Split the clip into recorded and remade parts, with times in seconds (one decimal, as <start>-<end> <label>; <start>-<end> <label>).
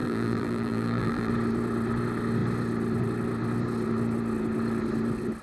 0.0-1.3 remade; 1.3-5.4 recorded